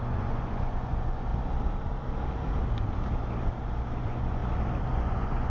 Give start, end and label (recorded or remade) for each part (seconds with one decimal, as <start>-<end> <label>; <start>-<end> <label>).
0.0-1.3 remade; 1.3-4.0 recorded; 4.0-4.4 remade; 4.4-4.9 recorded; 4.9-5.5 remade